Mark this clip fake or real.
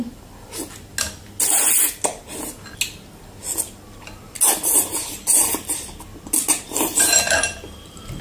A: real